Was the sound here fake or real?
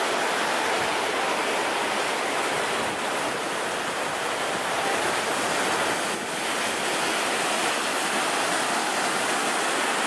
real